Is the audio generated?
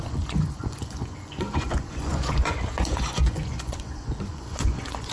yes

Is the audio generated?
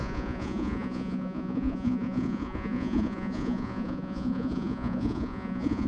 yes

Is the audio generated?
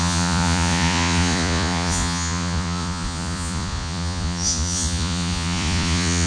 yes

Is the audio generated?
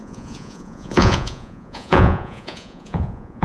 yes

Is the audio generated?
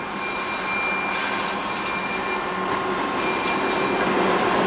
no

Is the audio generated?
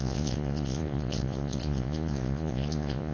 yes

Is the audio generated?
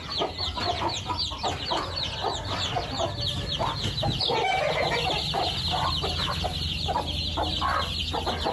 no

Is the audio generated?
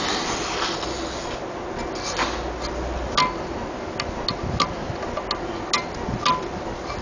no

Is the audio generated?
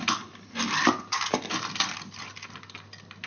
no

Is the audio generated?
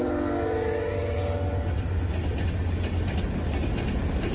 no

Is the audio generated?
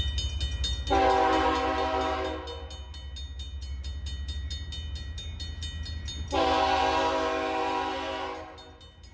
no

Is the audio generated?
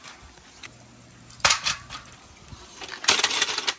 no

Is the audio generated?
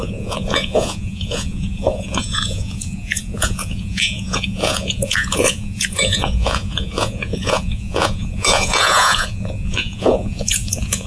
yes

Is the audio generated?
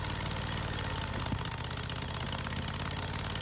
no